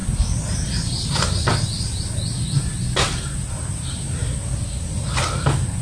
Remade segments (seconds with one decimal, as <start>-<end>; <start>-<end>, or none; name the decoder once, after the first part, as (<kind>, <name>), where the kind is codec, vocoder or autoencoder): none